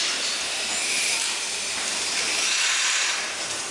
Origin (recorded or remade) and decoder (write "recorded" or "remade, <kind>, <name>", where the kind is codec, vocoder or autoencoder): remade, vocoder, BigVGAN v2